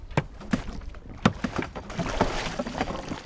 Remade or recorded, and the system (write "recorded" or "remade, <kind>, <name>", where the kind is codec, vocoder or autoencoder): recorded